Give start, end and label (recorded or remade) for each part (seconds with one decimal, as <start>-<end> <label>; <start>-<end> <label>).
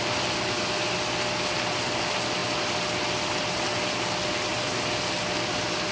0.0-5.9 recorded